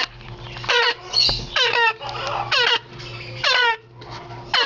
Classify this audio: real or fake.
real